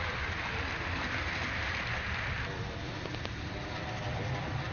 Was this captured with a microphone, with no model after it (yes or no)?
yes